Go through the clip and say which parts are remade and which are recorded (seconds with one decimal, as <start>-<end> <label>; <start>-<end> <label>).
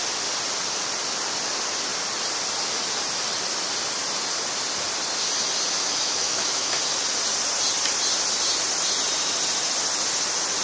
0.0-5.8 recorded; 5.8-6.8 remade; 6.8-10.6 recorded